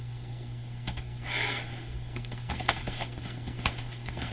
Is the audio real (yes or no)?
no